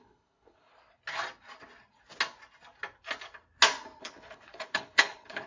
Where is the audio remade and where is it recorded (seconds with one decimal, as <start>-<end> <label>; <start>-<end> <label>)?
0.0-0.7 remade; 0.7-4.0 recorded; 4.0-5.5 remade